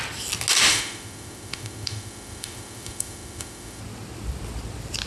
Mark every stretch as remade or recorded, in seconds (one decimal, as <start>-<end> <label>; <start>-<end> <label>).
0.0-0.7 recorded; 0.7-3.8 remade; 3.8-5.1 recorded